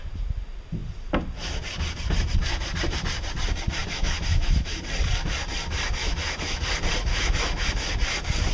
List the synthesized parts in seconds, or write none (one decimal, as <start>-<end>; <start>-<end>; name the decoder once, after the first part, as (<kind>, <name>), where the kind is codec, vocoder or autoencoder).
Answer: 3.8-4.8 (autoencoder, DAC-VAE); 6.0-6.6; 7.1-7.7